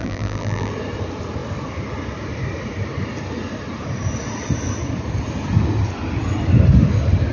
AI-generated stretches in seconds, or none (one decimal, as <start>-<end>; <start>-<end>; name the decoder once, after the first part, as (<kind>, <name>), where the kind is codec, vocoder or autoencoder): 0.0-0.7 (vocoder, BigVGAN v2)